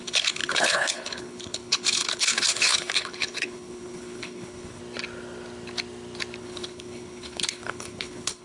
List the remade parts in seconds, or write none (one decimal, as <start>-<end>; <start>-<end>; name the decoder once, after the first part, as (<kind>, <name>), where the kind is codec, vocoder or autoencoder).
0.0-4.8 (codec, HILCodec); 6.4-8.4